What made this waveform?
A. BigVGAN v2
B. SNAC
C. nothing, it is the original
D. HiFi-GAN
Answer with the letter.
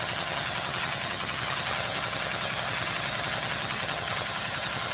D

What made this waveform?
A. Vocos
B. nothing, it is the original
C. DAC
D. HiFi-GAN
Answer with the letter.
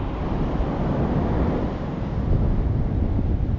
B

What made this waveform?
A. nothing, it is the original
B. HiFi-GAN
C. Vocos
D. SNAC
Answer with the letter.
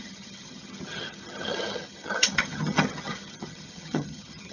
B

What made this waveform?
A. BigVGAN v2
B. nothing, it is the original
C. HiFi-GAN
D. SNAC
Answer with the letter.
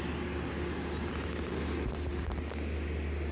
B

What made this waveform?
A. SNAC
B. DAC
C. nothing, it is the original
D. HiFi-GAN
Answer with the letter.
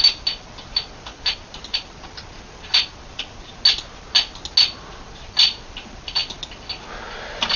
C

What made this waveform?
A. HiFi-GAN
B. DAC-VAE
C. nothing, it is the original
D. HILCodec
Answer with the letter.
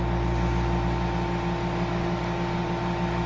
C